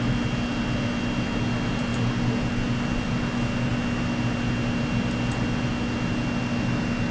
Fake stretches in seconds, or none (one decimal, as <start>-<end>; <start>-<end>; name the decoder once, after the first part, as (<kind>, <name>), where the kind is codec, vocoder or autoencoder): none